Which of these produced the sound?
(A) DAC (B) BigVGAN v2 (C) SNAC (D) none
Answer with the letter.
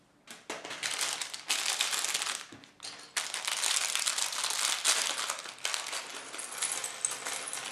D